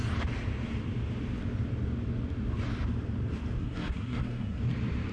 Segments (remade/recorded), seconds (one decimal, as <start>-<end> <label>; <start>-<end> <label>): 0.0-3.6 recorded; 3.6-4.6 remade; 4.6-5.1 recorded